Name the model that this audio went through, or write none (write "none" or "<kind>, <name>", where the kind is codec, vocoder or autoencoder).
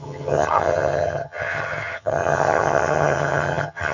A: vocoder, HiFi-GAN